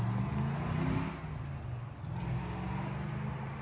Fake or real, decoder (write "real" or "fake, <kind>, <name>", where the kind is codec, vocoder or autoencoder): real